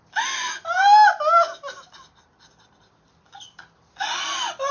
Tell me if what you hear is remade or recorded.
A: recorded